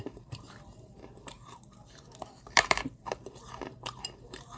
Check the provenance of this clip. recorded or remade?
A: remade